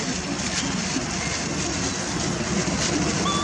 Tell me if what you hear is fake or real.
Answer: real